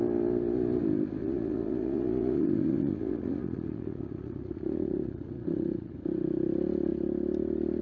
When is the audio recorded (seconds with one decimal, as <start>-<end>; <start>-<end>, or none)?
0.0-1.2; 5.9-7.8